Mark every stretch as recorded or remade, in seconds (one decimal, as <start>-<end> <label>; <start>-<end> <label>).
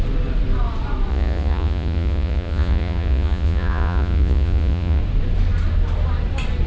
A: 0.0-1.1 recorded; 1.1-5.0 remade; 5.0-6.7 recorded